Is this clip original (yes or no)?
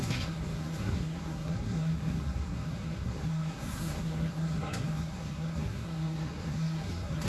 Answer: no